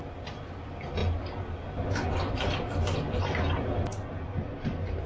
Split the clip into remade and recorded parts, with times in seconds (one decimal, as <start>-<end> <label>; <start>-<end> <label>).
0.0-5.1 recorded